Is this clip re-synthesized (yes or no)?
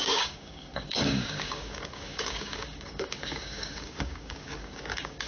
yes